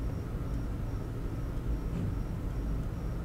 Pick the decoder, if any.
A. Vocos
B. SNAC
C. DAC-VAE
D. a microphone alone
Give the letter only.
D